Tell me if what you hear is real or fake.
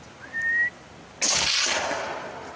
real